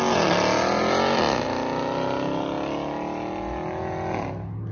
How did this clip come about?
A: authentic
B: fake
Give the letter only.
A